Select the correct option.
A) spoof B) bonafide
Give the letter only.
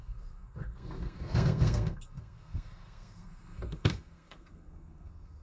A